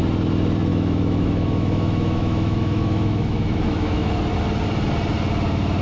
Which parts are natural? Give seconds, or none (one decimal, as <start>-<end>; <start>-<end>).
0.0-0.7; 4.1-5.8